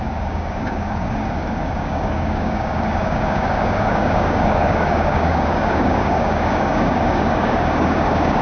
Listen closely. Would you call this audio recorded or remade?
remade